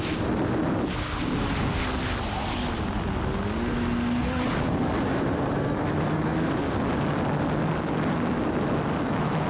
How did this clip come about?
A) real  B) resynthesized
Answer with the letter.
A